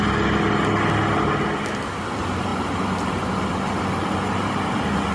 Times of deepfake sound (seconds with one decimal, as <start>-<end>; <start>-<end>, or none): none